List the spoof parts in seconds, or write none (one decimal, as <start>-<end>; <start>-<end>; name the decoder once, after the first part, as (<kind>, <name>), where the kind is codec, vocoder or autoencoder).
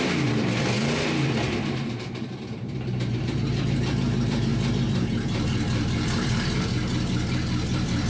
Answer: 0.0-4.5 (vocoder, BigVGAN v2); 5.3-8.1